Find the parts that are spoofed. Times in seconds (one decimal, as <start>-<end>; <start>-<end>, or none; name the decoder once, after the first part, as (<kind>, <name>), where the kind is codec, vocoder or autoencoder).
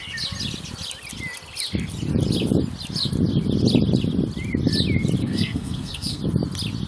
5.2-6.2 (codec, SNAC)